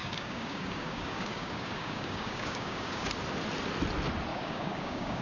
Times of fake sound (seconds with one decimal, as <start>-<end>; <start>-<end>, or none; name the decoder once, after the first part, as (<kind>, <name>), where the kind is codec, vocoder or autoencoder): 0.0-3.1 (codec, DAC); 4.3-5.2